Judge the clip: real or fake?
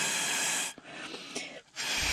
real